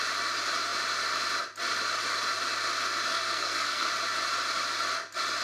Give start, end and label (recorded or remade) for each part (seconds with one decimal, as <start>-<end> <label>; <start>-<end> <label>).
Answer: 0.0-3.1 recorded; 3.1-3.9 remade; 3.9-5.4 recorded